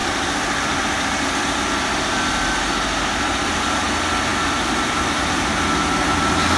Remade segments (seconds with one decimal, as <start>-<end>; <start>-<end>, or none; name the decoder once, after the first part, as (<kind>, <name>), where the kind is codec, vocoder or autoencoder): 4.3-5.5 (vocoder, BigVGAN v2)